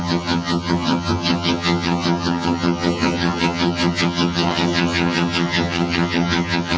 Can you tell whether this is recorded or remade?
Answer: remade